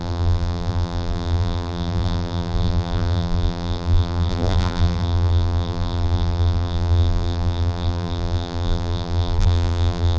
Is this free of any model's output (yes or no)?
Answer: no